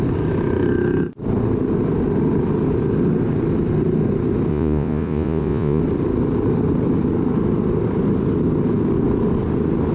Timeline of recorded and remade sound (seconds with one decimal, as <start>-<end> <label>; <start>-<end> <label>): 0.0-4.5 recorded; 4.5-5.8 remade; 5.8-9.9 recorded